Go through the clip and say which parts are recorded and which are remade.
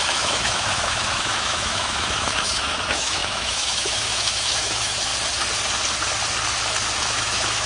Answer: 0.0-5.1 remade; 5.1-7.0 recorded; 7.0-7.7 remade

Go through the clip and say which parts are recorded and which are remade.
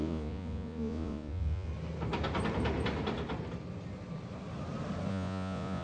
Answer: 0.0-1.7 remade; 1.7-5.1 recorded; 5.1-5.8 remade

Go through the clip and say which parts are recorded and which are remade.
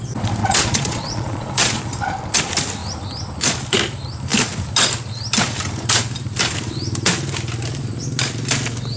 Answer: 0.0-0.4 recorded; 0.4-1.8 remade; 1.8-9.0 recorded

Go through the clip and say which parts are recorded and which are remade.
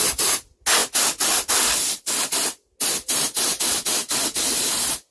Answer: 0.0-5.1 recorded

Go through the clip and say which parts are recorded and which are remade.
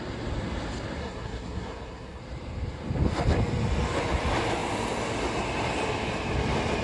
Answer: 0.0-1.0 recorded; 1.0-2.2 remade; 2.2-6.8 recorded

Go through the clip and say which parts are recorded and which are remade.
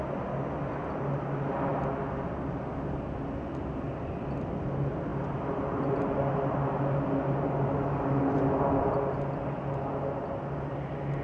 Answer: 0.0-11.2 recorded